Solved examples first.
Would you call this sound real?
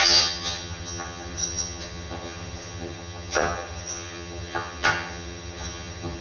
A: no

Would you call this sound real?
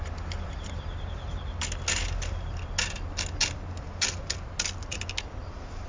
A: yes